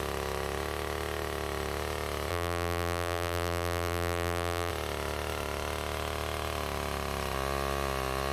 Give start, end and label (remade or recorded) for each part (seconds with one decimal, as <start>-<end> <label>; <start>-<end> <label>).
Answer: 0.0-2.3 recorded; 2.3-4.7 remade; 4.7-8.3 recorded